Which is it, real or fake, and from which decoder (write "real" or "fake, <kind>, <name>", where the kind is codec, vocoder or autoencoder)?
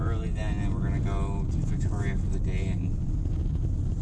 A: real